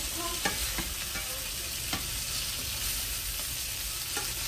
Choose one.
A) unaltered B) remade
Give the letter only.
A